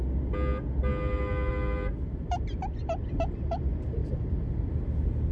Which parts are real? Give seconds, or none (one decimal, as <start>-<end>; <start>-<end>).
0.0-4.0; 4.7-5.3